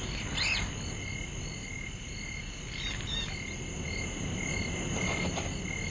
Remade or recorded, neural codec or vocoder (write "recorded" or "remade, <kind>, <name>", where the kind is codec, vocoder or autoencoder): recorded